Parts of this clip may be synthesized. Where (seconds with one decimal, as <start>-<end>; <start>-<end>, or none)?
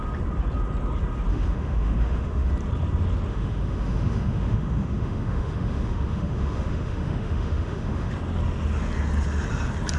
1.3-2.5; 3.3-8.1